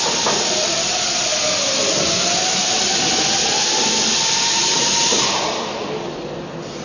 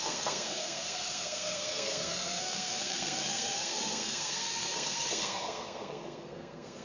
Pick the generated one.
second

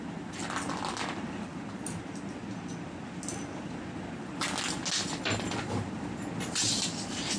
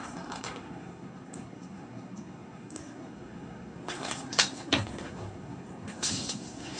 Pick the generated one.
second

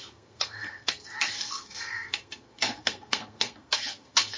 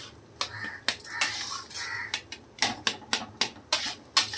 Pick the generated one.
first